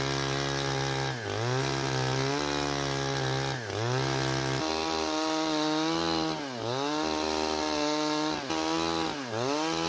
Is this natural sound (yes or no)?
yes